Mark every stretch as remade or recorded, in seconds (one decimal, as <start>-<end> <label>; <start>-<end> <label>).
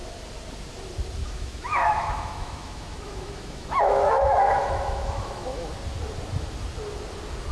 0.0-1.2 recorded; 1.2-5.7 remade; 5.7-7.5 recorded